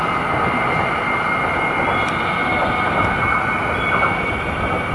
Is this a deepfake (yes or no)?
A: no